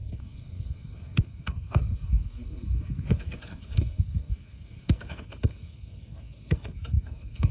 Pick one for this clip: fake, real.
fake